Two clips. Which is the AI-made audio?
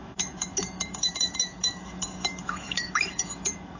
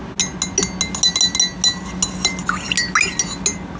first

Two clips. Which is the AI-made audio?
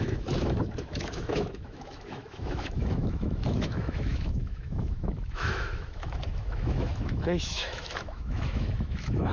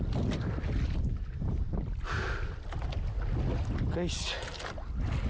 first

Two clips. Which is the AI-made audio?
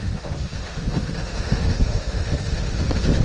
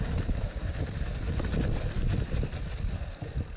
first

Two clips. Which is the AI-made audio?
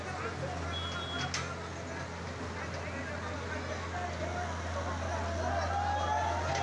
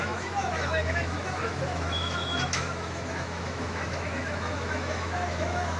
second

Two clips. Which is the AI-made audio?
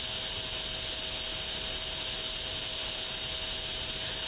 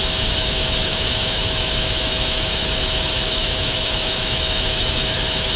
second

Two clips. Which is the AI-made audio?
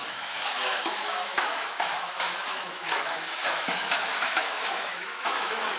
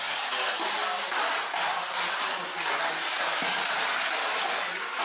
first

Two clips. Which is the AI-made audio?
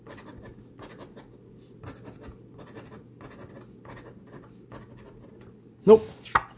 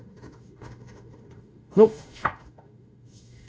second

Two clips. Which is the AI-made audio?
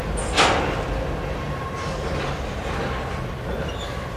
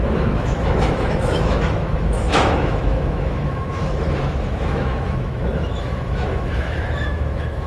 second